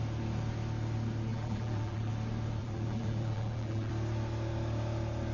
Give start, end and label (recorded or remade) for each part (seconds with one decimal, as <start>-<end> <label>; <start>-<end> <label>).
0.0-1.3 recorded; 1.3-2.1 remade; 2.1-2.6 recorded; 2.6-3.9 remade; 3.9-5.3 recorded